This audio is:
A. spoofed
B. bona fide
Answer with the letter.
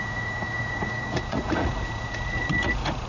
A